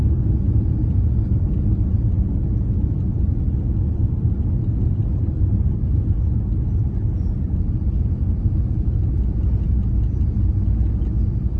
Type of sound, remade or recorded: recorded